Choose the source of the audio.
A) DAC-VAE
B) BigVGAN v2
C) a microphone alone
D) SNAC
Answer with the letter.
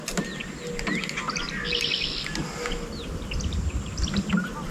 C